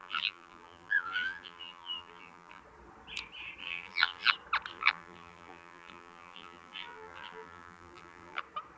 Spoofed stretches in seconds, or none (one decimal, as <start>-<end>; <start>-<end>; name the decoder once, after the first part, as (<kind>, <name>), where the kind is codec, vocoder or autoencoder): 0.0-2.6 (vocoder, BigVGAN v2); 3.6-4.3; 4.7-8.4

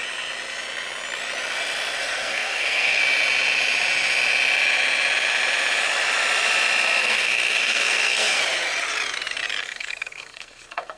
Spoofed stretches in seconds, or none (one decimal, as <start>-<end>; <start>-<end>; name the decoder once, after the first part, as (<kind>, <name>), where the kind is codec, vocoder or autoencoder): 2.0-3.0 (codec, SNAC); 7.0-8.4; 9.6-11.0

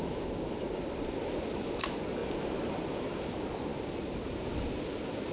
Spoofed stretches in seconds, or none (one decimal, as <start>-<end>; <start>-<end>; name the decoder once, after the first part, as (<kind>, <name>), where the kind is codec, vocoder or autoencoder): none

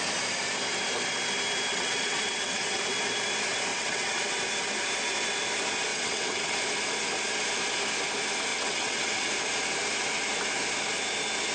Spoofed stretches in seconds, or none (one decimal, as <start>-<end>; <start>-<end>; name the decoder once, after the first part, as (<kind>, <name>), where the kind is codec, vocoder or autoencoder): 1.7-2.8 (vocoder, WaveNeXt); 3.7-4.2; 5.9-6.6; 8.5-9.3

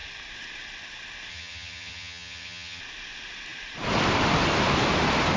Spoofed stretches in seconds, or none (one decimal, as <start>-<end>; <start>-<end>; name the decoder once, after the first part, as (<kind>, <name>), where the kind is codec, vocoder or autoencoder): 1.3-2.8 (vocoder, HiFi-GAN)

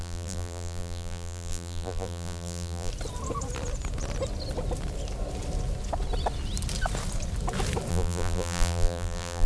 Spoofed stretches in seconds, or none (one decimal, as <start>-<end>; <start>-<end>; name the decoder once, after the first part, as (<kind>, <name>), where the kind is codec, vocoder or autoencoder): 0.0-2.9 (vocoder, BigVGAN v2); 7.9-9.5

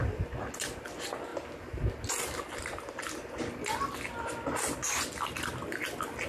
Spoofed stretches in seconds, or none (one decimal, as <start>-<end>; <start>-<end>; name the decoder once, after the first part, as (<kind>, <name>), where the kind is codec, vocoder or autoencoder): none

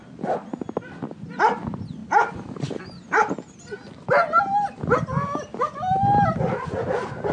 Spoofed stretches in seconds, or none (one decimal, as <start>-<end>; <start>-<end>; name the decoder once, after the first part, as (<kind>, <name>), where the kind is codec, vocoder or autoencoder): none